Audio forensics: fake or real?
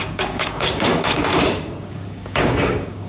fake